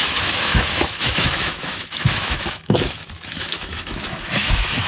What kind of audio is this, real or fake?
fake